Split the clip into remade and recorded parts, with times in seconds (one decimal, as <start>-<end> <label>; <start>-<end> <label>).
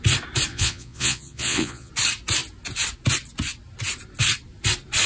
0.0-0.5 recorded; 0.5-1.9 remade; 1.9-5.1 recorded